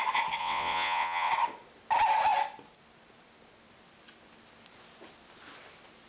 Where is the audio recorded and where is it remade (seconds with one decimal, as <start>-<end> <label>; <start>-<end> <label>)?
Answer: 0.0-0.4 recorded; 0.4-1.3 remade; 1.3-6.1 recorded